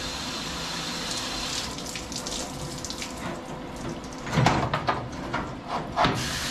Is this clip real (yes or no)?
yes